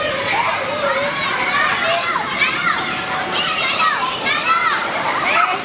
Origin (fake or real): fake